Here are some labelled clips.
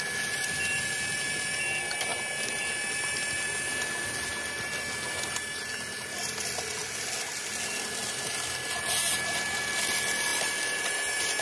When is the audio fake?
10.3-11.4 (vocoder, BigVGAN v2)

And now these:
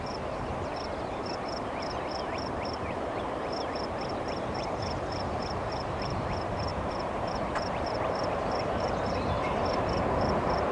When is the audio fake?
0.0-10.7 (vocoder, BigVGAN v2)